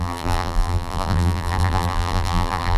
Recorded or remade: remade